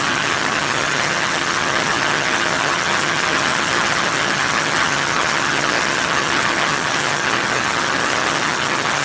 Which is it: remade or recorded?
remade